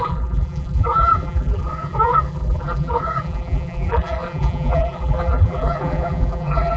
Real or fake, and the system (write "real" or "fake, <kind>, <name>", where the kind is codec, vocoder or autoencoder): fake, vocoder, BigVGAN v2